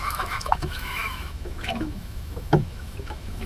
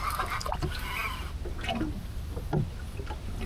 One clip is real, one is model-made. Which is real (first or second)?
second